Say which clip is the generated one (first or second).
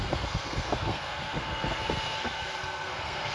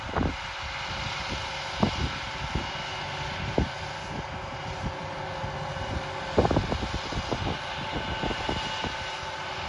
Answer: first